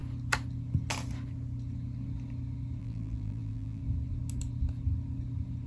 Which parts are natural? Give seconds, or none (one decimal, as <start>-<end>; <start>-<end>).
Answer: 0.0-2.8; 3.8-5.7